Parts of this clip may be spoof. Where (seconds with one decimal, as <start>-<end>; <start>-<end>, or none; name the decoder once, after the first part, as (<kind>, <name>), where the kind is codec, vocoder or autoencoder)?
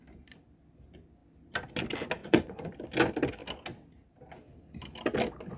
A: 2.2-2.7 (vocoder, Vocos)